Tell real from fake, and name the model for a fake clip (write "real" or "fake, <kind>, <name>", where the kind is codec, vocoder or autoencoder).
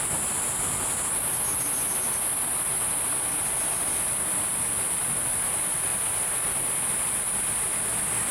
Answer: real